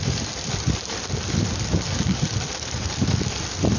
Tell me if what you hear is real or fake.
real